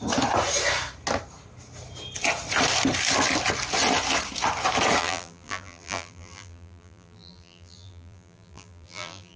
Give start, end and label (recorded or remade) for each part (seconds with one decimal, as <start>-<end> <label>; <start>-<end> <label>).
0.0-5.0 recorded; 5.0-9.4 remade